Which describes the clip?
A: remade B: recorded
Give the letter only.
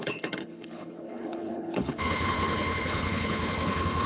A